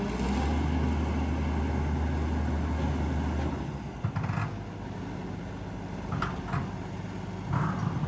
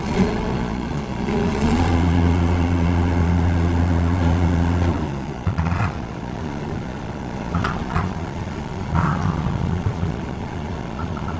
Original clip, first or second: first